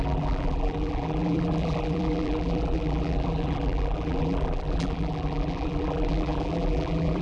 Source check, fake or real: fake